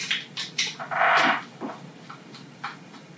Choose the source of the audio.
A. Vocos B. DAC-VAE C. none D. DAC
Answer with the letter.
C